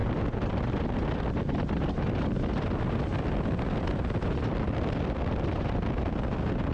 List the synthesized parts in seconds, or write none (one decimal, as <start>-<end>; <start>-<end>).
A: none